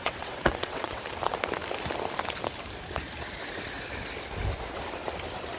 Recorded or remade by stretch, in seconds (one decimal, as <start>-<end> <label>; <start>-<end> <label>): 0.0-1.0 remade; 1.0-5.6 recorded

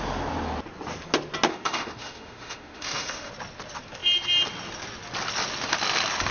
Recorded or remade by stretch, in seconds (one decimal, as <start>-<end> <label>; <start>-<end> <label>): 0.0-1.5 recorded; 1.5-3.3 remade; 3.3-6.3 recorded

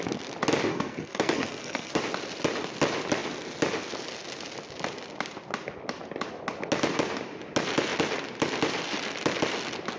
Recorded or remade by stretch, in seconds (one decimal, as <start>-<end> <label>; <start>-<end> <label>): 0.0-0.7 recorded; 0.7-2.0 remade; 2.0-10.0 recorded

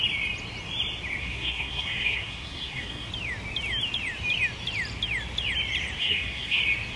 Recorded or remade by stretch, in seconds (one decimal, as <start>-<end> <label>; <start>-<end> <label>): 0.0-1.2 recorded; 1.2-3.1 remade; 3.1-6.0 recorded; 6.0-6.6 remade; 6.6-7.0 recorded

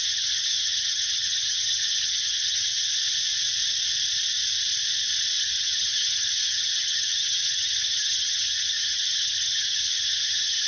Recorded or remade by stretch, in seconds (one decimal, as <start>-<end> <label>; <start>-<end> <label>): 0.0-2.7 remade; 2.7-5.4 recorded; 5.4-10.7 remade

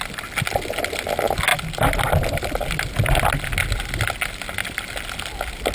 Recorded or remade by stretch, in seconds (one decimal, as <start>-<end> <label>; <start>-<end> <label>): 0.0-5.7 recorded

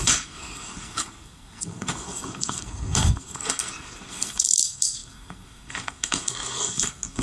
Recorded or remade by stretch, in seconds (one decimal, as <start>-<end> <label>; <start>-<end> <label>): 0.0-7.2 remade

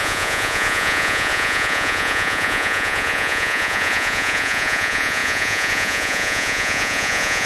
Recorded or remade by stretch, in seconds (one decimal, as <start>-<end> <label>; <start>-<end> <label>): 0.0-7.5 remade